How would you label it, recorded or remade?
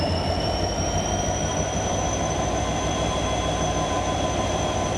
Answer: remade